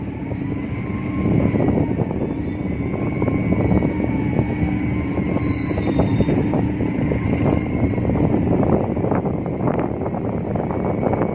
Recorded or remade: recorded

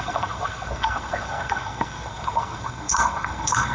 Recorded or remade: remade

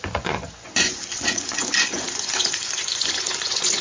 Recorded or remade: remade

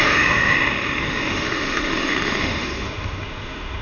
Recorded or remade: remade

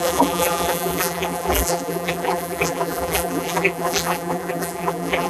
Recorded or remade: remade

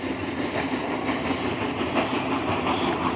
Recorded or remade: recorded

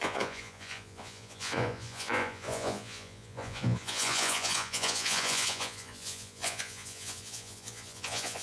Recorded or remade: remade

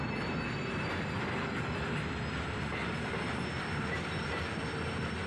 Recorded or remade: recorded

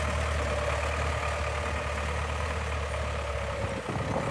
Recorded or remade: recorded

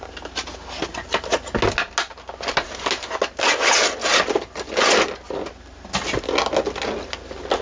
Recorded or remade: recorded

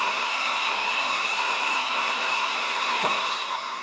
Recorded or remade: remade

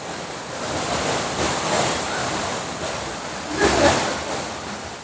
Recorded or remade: recorded